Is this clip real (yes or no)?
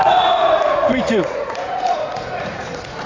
no